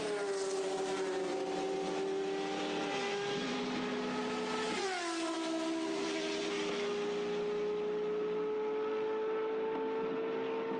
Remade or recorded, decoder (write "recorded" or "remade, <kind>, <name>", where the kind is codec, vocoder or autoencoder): recorded